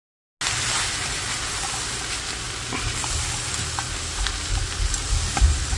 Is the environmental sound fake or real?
real